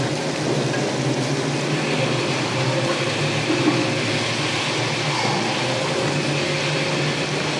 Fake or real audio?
real